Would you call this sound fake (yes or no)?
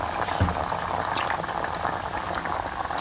no